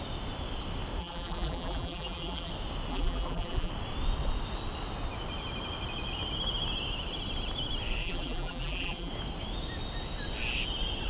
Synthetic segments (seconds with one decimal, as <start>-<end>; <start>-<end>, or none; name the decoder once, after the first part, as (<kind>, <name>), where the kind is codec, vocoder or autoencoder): 1.0-2.5 (vocoder, BigVGAN v2); 2.9-3.7; 8.0-9.1